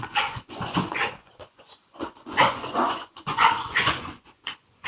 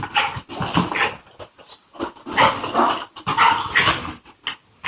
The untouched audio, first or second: second